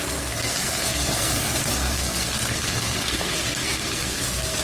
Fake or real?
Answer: fake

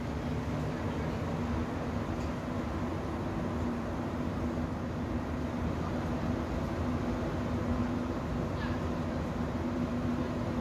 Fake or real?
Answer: real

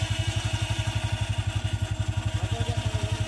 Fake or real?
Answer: real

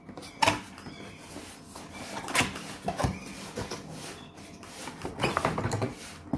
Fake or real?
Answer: real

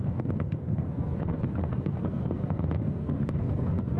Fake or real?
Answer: fake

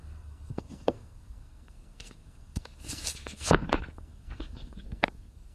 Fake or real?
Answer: fake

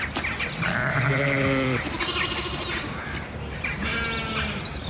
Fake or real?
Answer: real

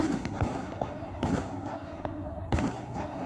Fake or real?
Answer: fake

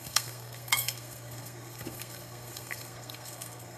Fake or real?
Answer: fake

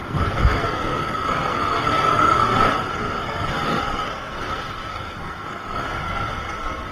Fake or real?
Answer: fake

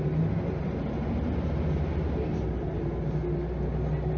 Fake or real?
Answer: real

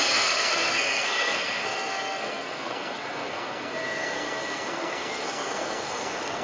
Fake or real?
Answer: fake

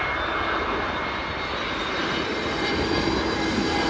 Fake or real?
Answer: real